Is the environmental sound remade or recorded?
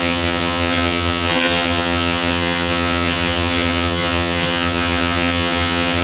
remade